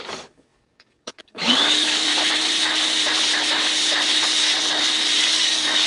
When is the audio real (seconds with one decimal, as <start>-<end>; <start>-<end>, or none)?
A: 2.1-5.2